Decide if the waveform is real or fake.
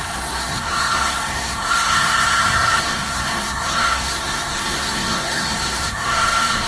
fake